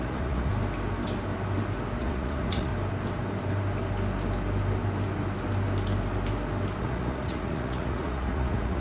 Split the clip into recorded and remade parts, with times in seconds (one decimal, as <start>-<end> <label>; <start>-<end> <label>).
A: 0.0-0.5 remade; 0.5-2.0 recorded; 2.0-2.7 remade; 2.7-6.8 recorded; 6.8-8.8 remade

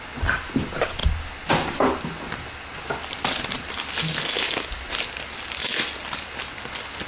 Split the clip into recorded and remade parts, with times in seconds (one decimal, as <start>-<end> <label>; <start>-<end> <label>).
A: 0.0-7.1 recorded

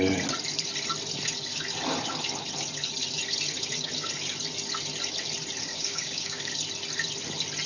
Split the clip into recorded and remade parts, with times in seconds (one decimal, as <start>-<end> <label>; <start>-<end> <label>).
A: 0.0-5.7 recorded; 5.7-6.5 remade; 6.5-7.7 recorded

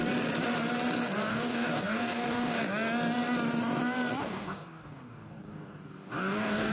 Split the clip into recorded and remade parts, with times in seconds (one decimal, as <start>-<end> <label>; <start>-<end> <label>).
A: 0.0-1.3 recorded; 1.3-2.6 remade; 2.6-4.2 recorded; 4.2-6.7 remade